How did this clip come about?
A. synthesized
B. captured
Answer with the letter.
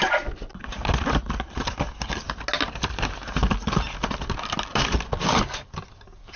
B